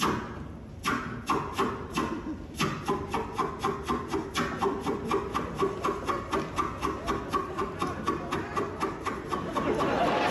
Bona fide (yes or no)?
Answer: yes